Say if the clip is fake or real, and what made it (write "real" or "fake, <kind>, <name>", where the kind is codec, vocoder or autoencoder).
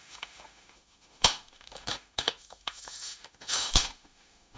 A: fake, autoencoder, DAC-VAE